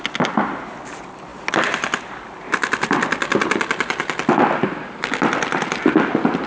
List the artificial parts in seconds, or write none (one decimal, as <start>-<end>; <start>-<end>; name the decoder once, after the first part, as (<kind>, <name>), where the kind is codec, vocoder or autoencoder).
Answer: none